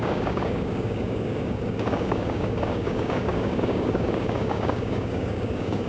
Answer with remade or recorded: remade